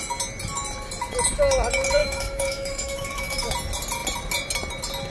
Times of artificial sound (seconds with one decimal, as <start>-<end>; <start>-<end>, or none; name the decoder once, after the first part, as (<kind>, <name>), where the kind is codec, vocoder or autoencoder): 2.0-3.5 (autoencoder, DAC-VAE)

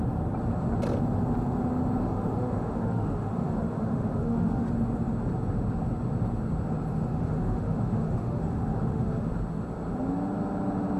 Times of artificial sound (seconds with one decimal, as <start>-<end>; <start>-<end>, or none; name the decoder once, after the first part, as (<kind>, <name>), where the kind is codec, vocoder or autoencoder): 2.0-4.7 (autoencoder, DAC-VAE); 6.9-9.3